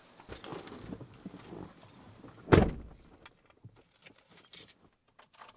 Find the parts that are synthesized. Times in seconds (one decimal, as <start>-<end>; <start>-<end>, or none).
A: none